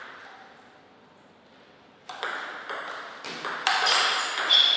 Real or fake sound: real